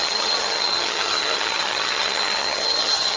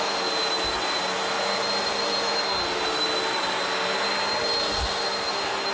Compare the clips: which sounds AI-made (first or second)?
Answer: first